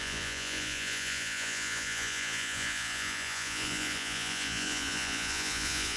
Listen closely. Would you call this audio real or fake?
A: fake